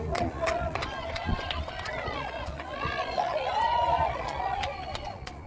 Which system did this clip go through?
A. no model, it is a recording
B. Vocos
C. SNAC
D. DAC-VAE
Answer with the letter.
B